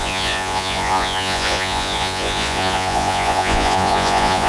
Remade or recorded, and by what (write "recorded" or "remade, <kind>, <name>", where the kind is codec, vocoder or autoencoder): remade, vocoder, Vocos